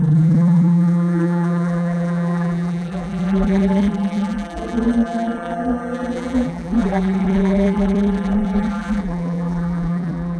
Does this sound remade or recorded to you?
remade